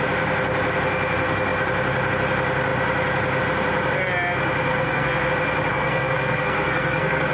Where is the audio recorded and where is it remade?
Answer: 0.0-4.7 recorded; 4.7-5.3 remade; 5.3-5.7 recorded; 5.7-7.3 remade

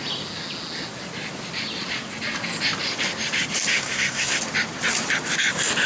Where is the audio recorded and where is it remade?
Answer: 0.0-3.7 recorded; 3.7-4.4 remade; 4.4-5.9 recorded

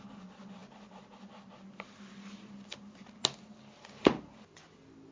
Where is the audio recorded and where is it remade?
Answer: 0.0-5.1 recorded

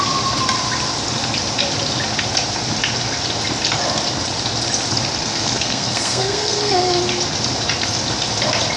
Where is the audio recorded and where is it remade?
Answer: 0.0-5.2 recorded; 5.2-7.0 remade; 7.0-8.8 recorded

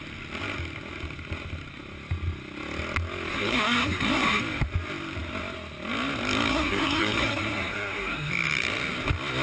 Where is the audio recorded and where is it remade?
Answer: 0.0-3.3 recorded; 3.3-4.4 remade; 4.4-6.5 recorded; 6.5-8.3 remade; 8.3-9.4 recorded

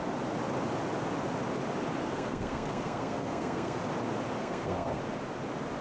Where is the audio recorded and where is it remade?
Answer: 0.0-2.0 recorded; 2.0-3.8 remade; 3.8-4.4 recorded; 4.4-5.0 remade; 5.0-5.8 recorded

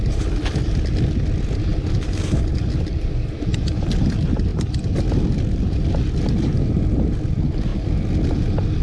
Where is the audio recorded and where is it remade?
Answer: 0.0-8.8 recorded